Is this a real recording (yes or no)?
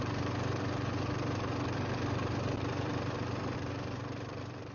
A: yes